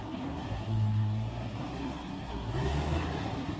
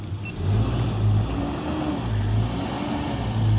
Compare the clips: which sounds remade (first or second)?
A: first